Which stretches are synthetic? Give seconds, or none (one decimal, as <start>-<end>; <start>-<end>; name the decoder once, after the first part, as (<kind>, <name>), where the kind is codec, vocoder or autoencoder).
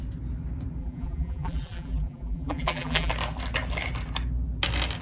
0.8-3.1 (vocoder, BigVGAN v2)